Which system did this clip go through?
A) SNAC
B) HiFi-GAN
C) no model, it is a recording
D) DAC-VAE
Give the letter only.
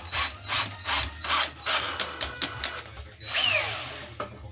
C